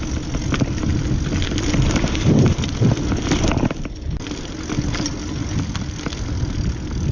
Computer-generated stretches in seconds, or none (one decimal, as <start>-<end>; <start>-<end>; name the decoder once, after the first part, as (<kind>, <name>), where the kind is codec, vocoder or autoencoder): none